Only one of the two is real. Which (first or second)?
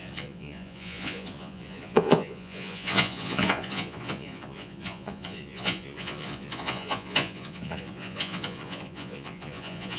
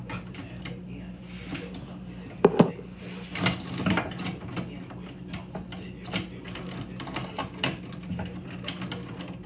second